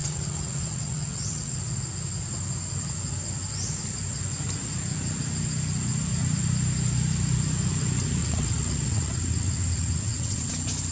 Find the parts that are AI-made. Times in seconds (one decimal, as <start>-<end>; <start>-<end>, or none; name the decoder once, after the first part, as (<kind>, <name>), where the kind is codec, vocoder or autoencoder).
0.0-1.6 (vocoder, WaveNeXt); 8.2-10.5